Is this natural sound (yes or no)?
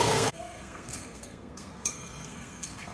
no